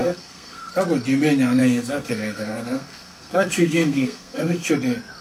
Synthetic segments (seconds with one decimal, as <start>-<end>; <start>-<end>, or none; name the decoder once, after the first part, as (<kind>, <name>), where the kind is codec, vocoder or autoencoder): 0.0-0.7 (codec, SNAC); 1.6-4.7